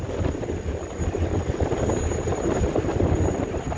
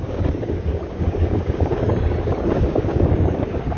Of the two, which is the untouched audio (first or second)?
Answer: first